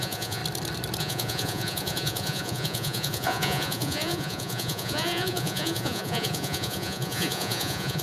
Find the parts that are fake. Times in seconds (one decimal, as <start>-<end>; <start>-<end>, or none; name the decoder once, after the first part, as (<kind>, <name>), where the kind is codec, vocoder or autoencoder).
0.0-0.4 (vocoder, Vocos); 1.0-8.0